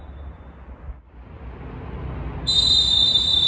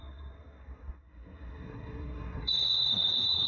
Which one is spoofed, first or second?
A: second